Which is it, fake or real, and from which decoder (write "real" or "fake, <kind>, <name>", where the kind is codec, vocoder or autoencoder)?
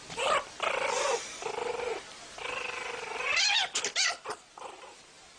fake, vocoder, BigVGAN v2